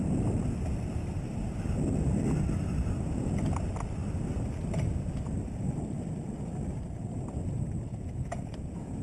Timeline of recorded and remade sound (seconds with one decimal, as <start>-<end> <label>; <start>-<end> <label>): 0.0-7.9 recorded; 7.9-9.0 remade